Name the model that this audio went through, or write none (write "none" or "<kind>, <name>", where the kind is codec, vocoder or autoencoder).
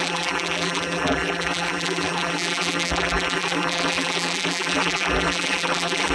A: vocoder, BigVGAN v2